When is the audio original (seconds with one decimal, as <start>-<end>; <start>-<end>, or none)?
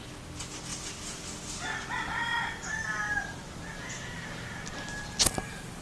0.0-5.8